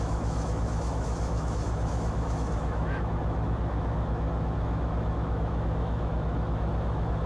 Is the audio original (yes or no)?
no